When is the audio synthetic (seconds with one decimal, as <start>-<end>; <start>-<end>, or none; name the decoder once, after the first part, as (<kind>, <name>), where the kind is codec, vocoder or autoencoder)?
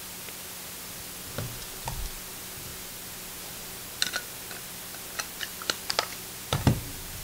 none